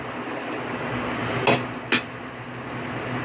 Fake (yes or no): no